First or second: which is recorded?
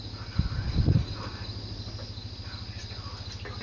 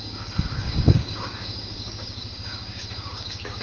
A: first